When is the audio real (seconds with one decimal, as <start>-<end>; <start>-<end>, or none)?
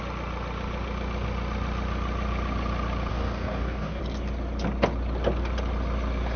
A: 0.0-3.1; 4.0-6.4